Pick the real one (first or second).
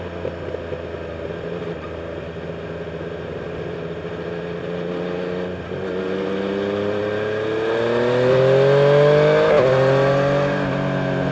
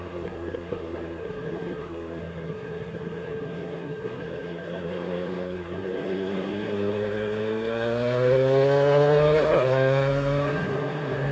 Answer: first